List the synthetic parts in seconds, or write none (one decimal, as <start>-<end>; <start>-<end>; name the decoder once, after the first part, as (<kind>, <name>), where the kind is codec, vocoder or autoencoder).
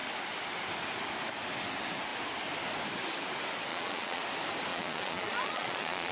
3.7-4.2 (vocoder, Vocos); 4.7-6.1